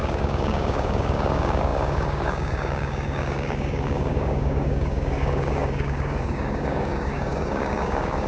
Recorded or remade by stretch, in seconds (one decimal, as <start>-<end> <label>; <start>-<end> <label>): 0.0-8.3 remade